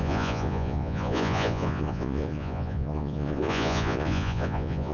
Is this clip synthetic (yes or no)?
yes